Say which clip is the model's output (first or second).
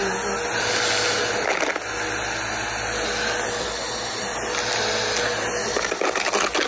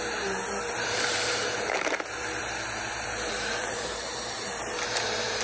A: second